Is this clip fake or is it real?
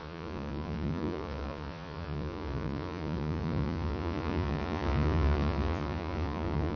fake